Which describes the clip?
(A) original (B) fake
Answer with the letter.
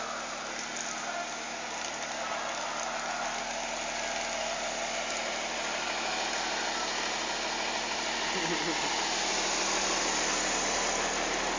A